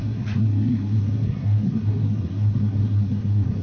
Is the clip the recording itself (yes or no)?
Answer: no